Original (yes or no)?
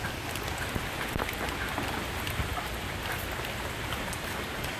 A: yes